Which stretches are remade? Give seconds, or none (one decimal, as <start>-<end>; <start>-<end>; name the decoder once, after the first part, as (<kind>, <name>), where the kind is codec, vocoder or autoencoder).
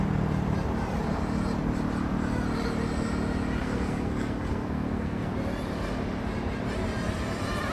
3.6-5.3 (codec, SNAC)